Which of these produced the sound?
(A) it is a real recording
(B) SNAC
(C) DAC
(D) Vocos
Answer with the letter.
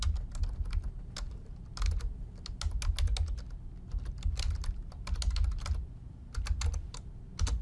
A